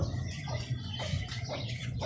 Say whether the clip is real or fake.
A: fake